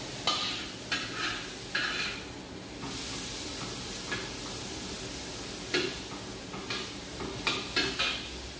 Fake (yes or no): no